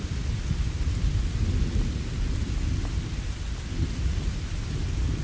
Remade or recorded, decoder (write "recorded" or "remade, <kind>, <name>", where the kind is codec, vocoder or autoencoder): recorded